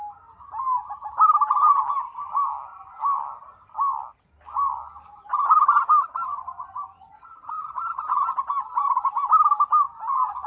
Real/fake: real